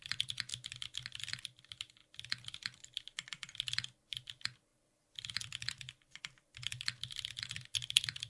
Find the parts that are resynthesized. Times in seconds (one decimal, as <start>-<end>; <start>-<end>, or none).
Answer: 0.0-0.5; 1.2-2.0; 3.5-8.3